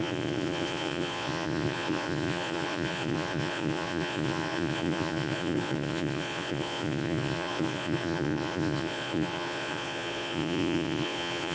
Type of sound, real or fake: fake